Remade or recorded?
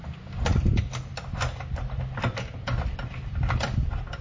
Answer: remade